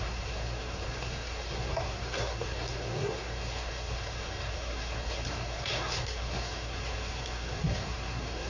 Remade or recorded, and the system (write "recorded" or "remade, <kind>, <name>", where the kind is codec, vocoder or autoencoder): remade, codec, SNAC